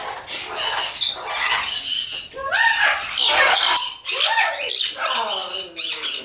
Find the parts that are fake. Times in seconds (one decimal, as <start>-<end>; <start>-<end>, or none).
0.0-0.5; 2.4-4.8